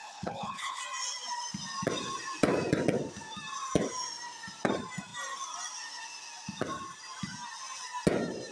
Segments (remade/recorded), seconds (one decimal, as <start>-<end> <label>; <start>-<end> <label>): 0.0-0.8 remade; 0.8-8.5 recorded